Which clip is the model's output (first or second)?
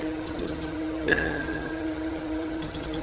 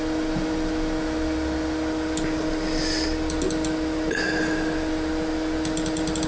first